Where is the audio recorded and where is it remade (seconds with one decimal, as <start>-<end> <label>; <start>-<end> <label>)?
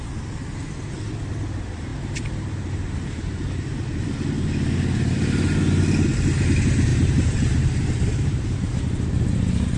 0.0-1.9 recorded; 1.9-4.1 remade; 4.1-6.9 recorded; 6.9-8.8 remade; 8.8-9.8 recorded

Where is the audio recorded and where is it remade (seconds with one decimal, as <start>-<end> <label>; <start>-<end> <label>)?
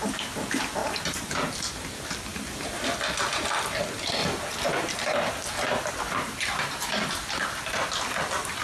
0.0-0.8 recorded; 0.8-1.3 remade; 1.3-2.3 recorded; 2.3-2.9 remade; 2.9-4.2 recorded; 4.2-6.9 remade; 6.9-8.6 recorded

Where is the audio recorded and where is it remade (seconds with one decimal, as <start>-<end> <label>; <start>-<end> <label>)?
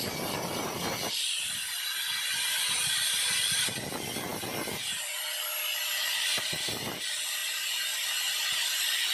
0.0-9.1 recorded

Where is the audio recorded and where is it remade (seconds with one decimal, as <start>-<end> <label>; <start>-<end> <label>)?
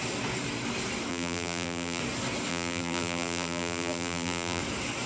0.0-1.1 recorded; 1.1-2.0 remade; 2.0-2.5 recorded; 2.5-4.6 remade; 4.6-5.1 recorded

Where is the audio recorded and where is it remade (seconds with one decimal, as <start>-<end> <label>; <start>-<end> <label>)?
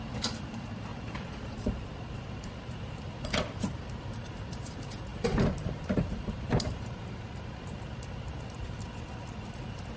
0.0-0.9 recorded; 0.9-3.3 remade; 3.3-5.1 recorded; 5.1-7.2 remade; 7.2-10.0 recorded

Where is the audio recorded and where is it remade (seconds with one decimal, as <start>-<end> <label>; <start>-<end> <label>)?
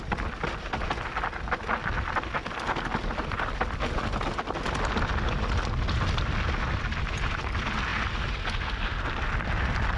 0.0-10.0 recorded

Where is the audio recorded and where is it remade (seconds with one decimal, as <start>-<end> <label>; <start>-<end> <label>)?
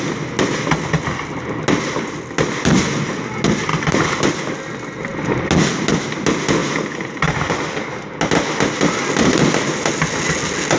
0.0-3.7 recorded; 3.7-4.4 remade; 4.4-6.6 recorded; 6.6-7.5 remade; 7.5-10.8 recorded